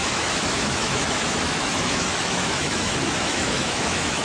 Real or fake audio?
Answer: fake